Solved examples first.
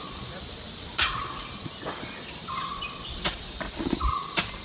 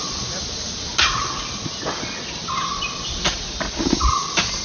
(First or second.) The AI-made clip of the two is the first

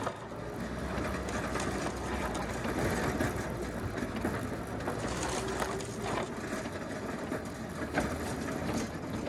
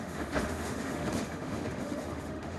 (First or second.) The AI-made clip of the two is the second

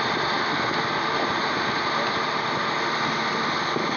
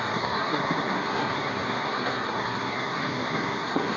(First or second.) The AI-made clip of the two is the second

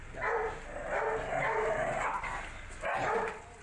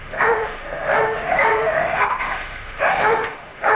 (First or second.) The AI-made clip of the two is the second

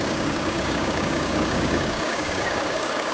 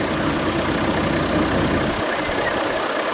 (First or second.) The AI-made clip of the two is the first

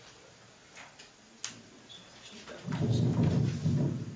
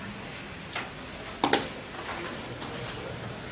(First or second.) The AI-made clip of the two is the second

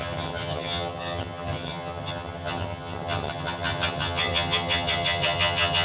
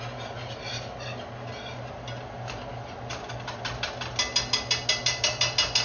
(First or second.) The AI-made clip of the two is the first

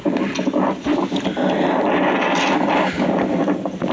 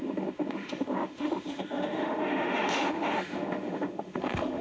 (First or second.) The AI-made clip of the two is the second